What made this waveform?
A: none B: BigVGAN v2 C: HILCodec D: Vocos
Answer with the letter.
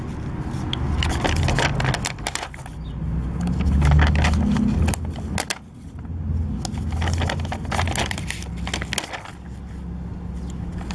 A